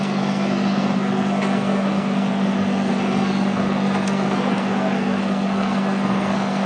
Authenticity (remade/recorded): remade